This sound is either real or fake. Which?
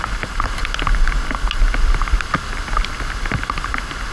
real